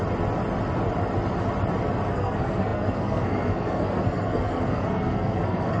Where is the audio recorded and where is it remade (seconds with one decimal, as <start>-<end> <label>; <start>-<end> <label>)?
0.0-2.1 recorded; 2.1-5.8 remade